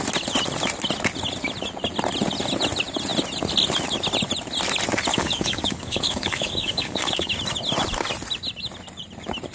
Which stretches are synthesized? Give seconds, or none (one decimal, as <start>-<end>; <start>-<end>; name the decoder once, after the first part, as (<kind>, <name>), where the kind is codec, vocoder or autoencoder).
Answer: 5.1-7.3 (codec, DAC)